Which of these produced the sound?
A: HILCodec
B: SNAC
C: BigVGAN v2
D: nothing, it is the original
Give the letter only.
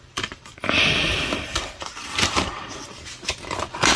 C